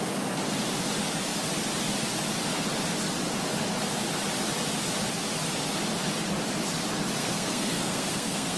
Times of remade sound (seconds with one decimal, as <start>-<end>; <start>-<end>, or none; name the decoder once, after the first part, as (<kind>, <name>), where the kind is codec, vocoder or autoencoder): 7.2-8.6 (codec, SNAC)